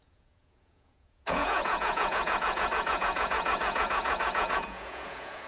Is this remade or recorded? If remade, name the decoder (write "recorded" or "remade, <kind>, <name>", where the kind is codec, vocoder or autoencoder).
remade, vocoder, Vocos